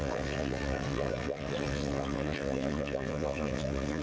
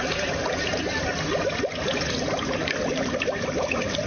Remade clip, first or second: first